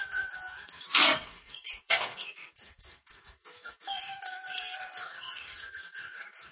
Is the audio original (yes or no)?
no